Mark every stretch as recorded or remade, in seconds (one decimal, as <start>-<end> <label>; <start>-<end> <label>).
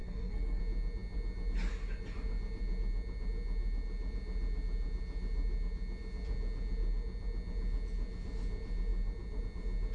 0.0-0.6 remade; 0.6-9.9 recorded